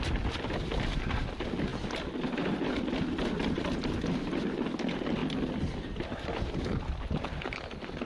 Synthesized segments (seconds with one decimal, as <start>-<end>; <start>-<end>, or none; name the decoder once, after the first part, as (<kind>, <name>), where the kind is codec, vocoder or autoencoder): none